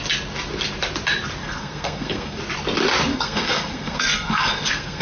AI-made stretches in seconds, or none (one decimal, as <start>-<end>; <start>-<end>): 1.4-2.4; 3.1-5.0